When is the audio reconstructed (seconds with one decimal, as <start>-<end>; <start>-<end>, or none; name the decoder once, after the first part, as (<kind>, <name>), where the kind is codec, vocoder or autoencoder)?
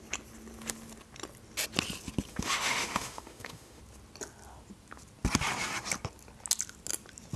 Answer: 2.3-3.8 (autoencoder, DAC-VAE)